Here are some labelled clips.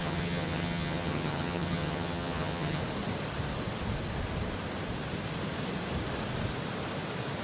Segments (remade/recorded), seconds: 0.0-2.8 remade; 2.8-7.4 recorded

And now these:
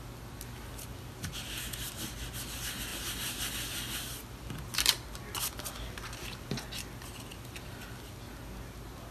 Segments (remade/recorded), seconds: 0.0-9.1 recorded